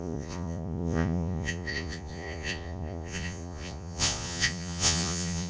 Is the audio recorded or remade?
remade